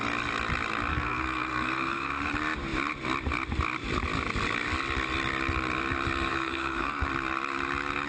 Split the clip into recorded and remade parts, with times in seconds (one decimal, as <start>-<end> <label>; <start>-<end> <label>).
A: 0.0-0.9 recorded; 0.9-2.3 remade; 2.3-6.3 recorded; 6.3-7.1 remade; 7.1-8.1 recorded